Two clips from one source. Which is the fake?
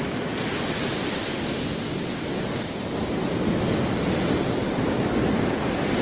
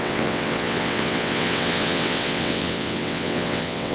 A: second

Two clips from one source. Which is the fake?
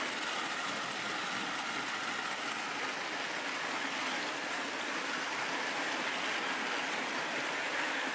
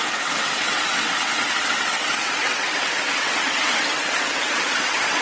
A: second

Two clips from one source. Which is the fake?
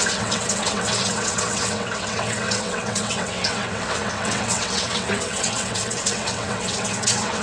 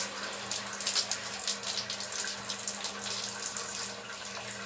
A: first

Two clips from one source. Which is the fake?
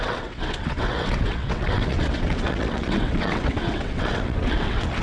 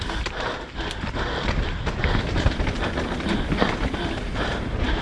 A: first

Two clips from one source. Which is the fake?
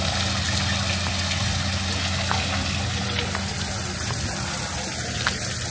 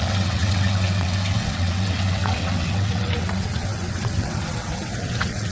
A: second